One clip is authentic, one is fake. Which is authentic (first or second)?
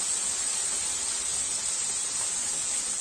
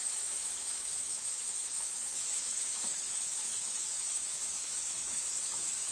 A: first